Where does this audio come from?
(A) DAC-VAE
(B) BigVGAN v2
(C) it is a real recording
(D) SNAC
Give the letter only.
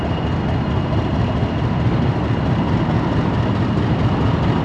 C